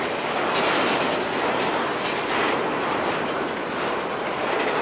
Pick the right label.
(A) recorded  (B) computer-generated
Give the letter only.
A